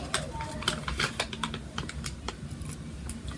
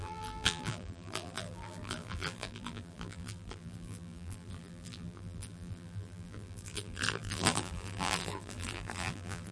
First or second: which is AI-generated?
second